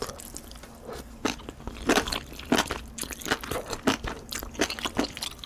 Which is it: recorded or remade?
recorded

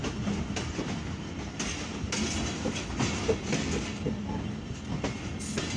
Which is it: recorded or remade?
recorded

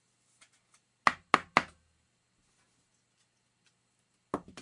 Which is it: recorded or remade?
recorded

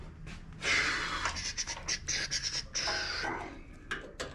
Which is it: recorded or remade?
recorded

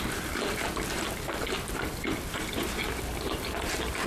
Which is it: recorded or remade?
recorded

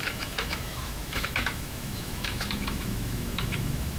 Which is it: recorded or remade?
remade